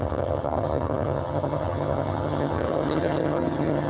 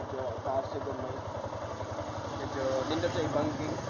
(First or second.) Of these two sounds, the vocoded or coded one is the first